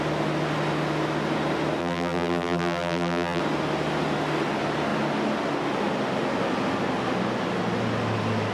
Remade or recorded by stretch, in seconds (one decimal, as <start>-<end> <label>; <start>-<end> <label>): 0.0-1.8 recorded; 1.8-3.4 remade; 3.4-8.5 recorded

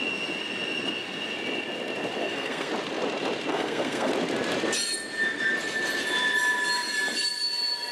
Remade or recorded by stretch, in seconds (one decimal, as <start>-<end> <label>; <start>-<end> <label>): 0.0-2.2 recorded; 2.2-2.7 remade; 2.7-3.5 recorded; 3.5-4.1 remade; 4.1-7.9 recorded

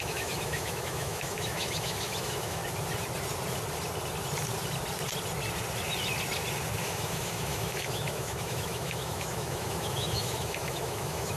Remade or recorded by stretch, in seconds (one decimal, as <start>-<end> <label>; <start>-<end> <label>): 0.0-2.6 remade; 2.6-6.8 recorded; 6.8-11.4 remade

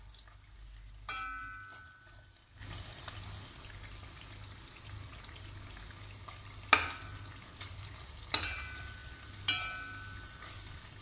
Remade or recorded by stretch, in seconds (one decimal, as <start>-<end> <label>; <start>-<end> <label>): 0.0-11.0 recorded